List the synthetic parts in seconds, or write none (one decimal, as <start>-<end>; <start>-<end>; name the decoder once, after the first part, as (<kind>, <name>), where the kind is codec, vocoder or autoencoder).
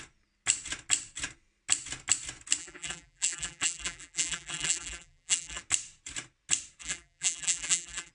2.6-5.6 (vocoder, BigVGAN v2); 6.8-8.1